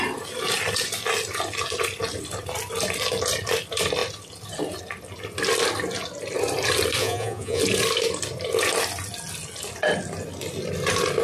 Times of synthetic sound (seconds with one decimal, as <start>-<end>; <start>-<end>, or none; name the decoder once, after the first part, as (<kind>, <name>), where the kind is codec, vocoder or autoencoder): 7.0-7.6 (vocoder, Vocos)